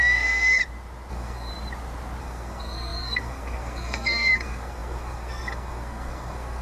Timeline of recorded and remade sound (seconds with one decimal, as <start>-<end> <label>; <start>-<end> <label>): 0.0-0.6 remade; 0.6-1.1 recorded; 1.1-1.5 remade; 1.5-2.2 recorded; 2.2-6.6 remade